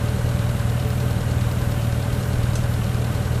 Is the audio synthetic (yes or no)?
yes